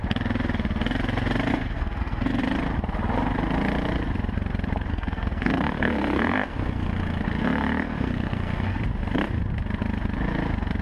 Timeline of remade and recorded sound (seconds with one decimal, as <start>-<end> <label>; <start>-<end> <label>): 0.0-1.5 recorded; 1.5-2.4 remade; 2.4-4.9 recorded; 4.9-8.8 remade; 8.8-10.8 recorded